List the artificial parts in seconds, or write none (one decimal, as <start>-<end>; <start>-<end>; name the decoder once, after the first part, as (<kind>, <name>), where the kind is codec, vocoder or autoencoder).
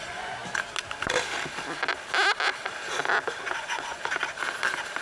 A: 0.0-0.4 (vocoder, Vocos); 3.4-4.0